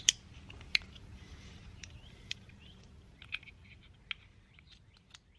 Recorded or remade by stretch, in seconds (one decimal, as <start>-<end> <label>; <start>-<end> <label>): 0.0-0.7 recorded; 0.7-3.8 remade; 3.8-5.4 recorded